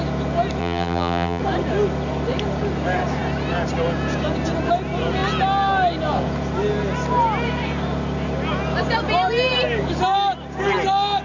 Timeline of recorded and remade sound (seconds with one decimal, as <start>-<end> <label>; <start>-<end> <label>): 0.0-0.6 recorded; 0.6-1.4 remade; 1.4-11.2 recorded